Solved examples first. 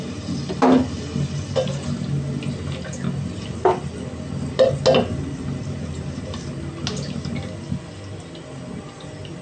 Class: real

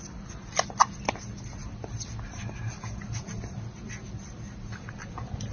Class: real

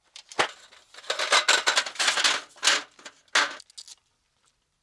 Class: real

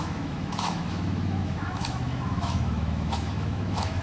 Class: fake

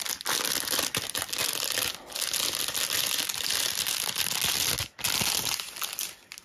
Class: real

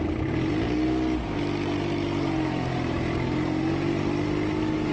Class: real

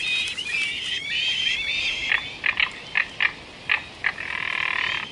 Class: real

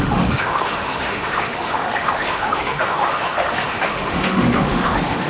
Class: fake